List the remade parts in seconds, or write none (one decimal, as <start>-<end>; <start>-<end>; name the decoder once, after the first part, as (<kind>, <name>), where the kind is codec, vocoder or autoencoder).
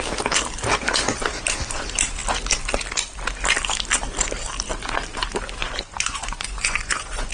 5.6-7.3 (vocoder, Vocos)